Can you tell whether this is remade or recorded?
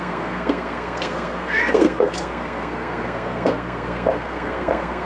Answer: remade